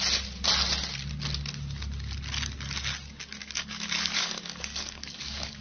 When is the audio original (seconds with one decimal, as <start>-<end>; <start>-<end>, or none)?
0.0-3.4